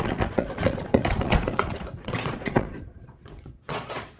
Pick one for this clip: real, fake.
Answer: fake